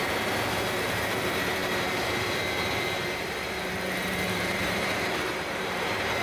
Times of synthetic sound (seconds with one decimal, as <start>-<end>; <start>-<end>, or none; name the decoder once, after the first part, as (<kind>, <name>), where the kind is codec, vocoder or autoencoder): 0.0-6.2 (vocoder, BigVGAN v2)